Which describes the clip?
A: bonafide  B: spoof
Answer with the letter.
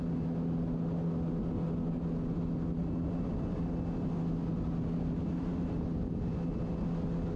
A